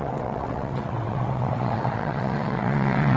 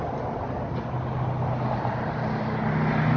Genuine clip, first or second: second